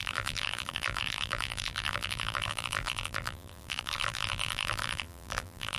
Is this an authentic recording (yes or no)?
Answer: no